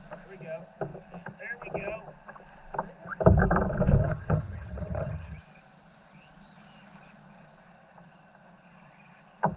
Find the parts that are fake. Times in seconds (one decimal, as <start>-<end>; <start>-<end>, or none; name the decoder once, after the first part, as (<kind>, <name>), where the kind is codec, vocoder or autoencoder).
4.0-5.4 (vocoder, HiFi-GAN)